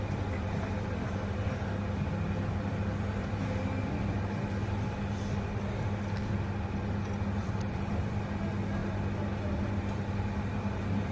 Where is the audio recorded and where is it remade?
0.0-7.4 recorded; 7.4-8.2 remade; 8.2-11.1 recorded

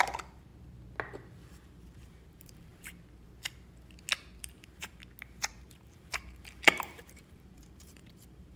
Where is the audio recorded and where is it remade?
0.0-0.5 remade; 0.5-1.5 recorded; 1.5-2.7 remade; 2.7-4.4 recorded; 4.4-5.0 remade; 5.0-5.5 recorded; 5.5-8.6 remade

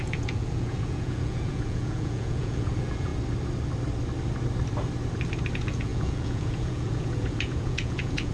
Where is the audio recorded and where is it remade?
0.0-3.1 remade; 3.1-5.5 recorded; 5.5-8.3 remade

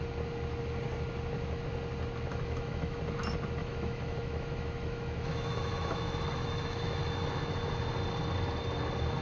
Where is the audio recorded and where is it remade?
0.0-2.3 recorded; 2.3-3.0 remade; 3.0-3.6 recorded; 3.6-7.7 remade; 7.7-9.2 recorded

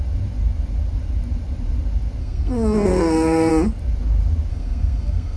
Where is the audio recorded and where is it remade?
0.0-2.2 recorded; 2.2-3.5 remade; 3.5-4.5 recorded; 4.5-5.4 remade

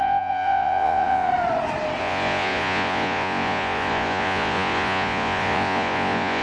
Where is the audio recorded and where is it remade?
0.0-1.3 remade; 1.3-2.0 recorded; 2.0-6.4 remade

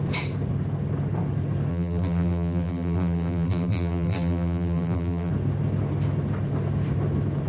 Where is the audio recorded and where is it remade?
0.0-1.7 recorded; 1.7-5.3 remade; 5.3-7.5 recorded

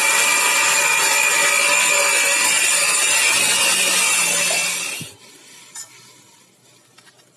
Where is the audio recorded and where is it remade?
0.0-7.4 recorded